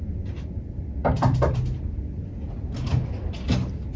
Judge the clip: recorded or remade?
recorded